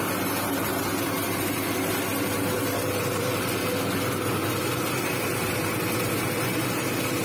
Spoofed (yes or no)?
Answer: no